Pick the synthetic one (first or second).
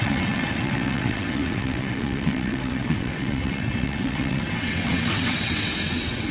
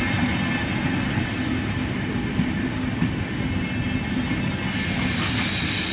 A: first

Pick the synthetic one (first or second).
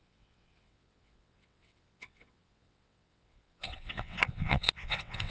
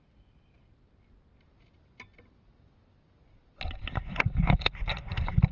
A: first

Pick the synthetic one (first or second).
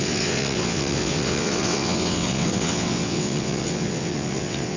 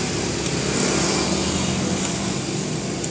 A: first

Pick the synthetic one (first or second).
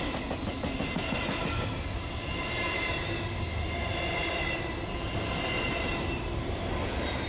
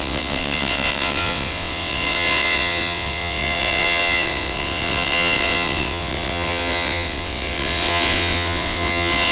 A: second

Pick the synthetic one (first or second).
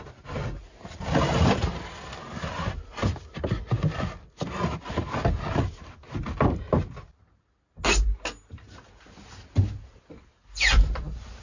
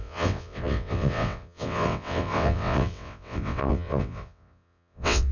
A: second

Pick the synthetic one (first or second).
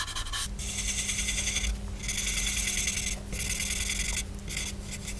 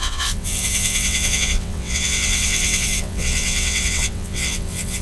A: second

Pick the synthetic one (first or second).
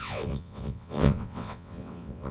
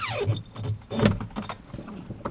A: first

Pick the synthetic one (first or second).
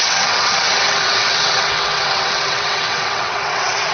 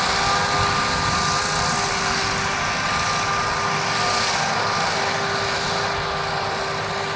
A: first